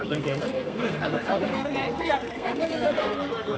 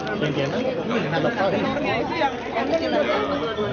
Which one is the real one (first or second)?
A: second